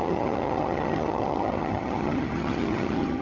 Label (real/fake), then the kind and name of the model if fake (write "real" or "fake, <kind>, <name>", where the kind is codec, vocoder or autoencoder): fake, vocoder, HiFi-GAN